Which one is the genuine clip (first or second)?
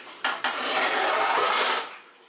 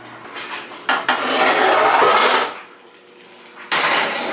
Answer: second